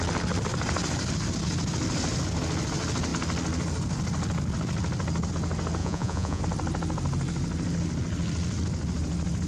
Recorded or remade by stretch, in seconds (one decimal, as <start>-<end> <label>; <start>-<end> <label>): 0.0-5.8 recorded; 5.8-6.4 remade; 6.4-9.5 recorded